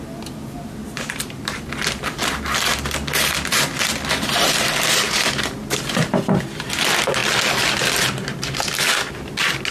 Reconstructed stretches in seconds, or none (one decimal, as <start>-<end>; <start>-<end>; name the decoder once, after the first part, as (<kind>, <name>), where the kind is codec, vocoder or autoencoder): 0.8-1.7 (vocoder, BigVGAN v2)